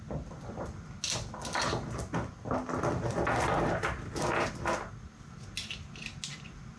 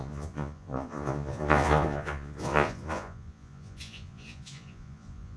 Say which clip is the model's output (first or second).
second